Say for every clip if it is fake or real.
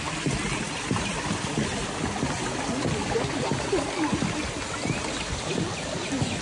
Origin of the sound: real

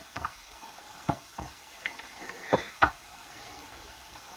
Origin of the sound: fake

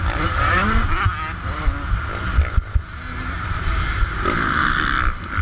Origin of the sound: real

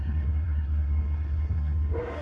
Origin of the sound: fake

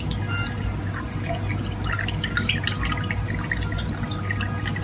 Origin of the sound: real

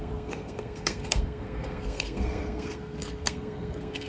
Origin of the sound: fake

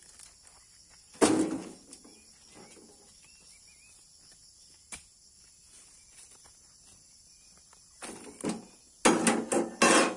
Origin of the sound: real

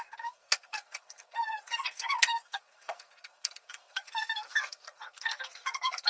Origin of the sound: fake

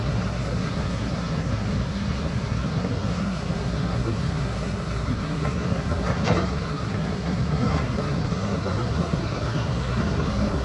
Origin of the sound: fake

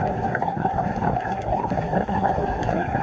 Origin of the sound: fake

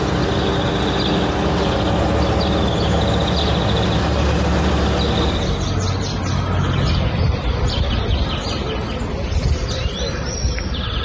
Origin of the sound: real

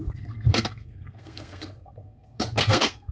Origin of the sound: fake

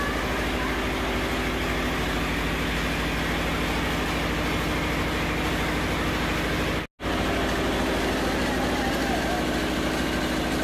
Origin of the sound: real